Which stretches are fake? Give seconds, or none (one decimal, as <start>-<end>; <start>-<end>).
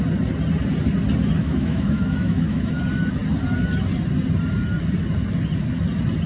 1.4-2.8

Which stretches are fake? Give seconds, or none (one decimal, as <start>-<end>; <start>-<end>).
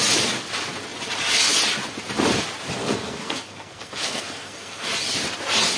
2.8-4.9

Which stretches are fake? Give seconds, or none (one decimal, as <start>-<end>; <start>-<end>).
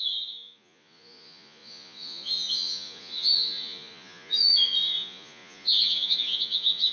0.0-6.9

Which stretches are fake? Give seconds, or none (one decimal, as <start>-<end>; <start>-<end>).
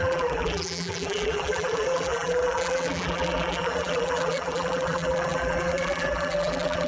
0.0-6.9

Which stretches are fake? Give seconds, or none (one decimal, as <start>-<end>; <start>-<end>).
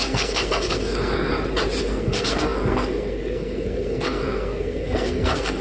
0.0-1.3; 1.8-5.6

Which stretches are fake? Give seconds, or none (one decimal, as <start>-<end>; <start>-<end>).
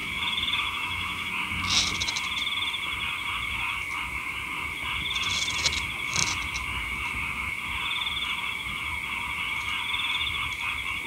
0.0-1.3